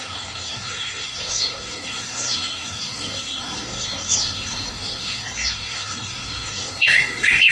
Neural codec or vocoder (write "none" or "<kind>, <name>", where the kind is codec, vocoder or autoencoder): codec, SNAC